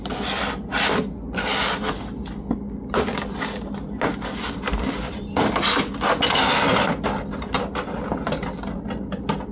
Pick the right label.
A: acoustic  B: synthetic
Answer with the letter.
A